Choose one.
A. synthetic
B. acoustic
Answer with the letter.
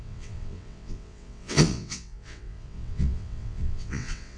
A